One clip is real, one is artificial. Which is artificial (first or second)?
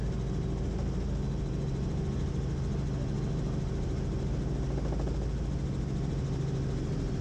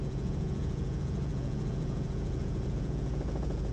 second